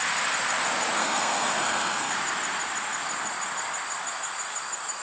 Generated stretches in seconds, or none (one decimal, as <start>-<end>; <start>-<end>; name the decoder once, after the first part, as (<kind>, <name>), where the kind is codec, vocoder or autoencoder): 1.0-2.1 (codec, SNAC)